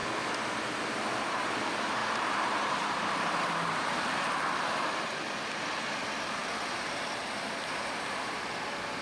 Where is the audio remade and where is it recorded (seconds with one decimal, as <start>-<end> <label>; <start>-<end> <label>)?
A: 0.0-2.0 recorded; 2.0-4.4 remade; 4.4-9.0 recorded